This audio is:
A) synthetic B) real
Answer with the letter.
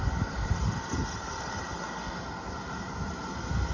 B